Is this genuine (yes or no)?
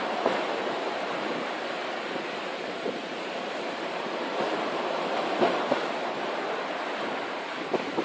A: no